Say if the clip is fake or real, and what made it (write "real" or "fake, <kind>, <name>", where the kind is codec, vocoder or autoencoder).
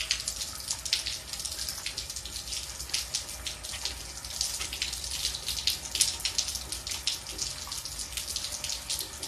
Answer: real